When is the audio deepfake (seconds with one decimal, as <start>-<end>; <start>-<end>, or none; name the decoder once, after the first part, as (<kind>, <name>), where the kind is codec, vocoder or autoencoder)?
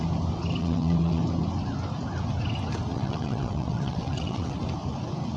0.6-1.2 (vocoder, WaveNeXt); 2.9-4.6